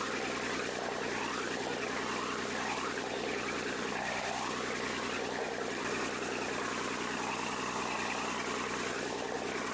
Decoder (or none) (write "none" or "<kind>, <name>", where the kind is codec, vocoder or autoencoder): none